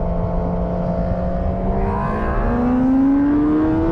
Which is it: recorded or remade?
recorded